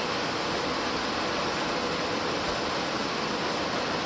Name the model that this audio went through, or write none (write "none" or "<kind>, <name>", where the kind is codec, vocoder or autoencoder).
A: none